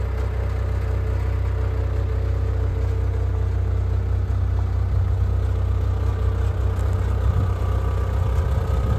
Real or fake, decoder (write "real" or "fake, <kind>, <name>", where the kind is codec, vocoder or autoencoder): real